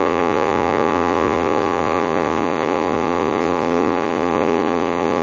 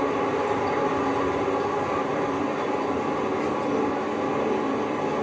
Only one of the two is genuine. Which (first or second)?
second